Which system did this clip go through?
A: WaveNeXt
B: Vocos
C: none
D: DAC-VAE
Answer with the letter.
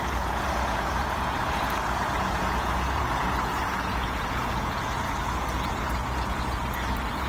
B